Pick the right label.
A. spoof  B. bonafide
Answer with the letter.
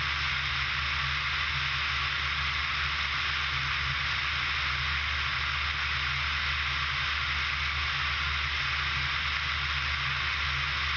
B